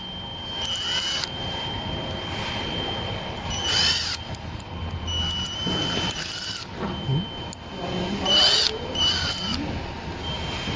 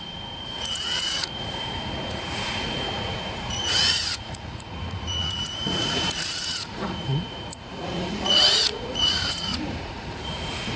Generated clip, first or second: second